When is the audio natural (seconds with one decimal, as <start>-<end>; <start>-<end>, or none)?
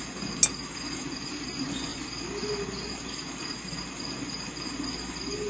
0.0-5.5